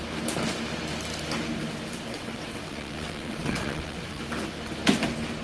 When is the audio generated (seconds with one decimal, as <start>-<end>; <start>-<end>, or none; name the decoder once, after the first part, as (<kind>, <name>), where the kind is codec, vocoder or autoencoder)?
2.1-4.2 (vocoder, WaveNeXt)